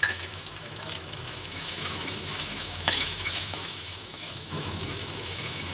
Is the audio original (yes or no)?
no